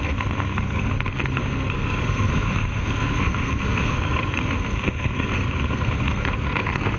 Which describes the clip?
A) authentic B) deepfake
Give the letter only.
B